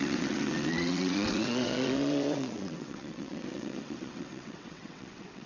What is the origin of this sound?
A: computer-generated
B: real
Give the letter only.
A